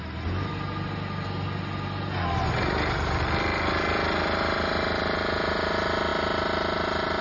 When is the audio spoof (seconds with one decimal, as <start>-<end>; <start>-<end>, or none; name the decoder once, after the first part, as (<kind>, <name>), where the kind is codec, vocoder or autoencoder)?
none

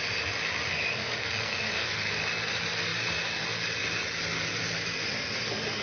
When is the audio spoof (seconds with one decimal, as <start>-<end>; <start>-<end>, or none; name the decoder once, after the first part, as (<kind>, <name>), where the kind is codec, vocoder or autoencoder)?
1.2-2.1 (codec, SNAC)

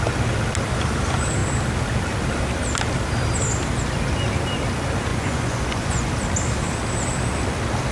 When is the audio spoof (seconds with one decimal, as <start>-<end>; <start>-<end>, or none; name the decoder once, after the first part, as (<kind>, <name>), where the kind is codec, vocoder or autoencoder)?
5.1-6.1 (vocoder, Vocos)

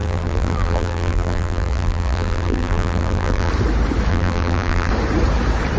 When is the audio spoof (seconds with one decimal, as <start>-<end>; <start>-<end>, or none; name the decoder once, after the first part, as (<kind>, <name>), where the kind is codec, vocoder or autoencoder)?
0.0-3.5 (vocoder, BigVGAN v2); 4.1-4.9

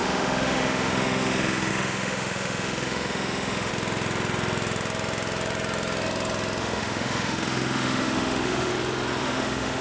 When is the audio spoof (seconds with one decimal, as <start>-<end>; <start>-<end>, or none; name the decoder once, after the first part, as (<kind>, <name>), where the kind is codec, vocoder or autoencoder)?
0.0-3.7 (autoencoder, DAC-VAE); 6.6-8.7; 9.2-9.8

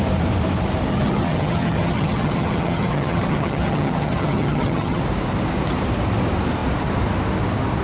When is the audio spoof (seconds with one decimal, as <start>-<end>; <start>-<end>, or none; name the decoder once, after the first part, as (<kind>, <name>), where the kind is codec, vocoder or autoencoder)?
0.9-5.0 (vocoder, HiFi-GAN)

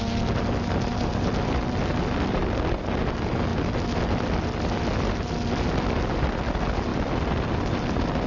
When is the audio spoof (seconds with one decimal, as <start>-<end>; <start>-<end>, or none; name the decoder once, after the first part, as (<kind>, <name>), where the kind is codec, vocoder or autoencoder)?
none